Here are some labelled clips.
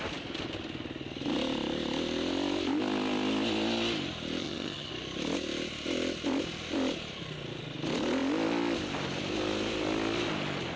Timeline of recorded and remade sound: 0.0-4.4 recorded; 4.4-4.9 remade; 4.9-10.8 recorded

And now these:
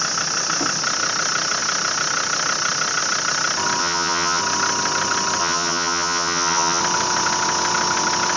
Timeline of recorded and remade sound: 0.0-3.8 recorded; 3.8-4.4 remade; 4.4-5.4 recorded; 5.4-6.8 remade; 6.8-8.4 recorded